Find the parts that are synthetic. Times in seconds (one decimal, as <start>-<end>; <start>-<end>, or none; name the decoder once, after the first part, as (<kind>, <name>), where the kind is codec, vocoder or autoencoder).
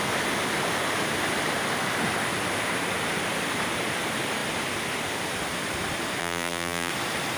6.2-6.9 (vocoder, BigVGAN v2)